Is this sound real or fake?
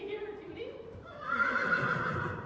fake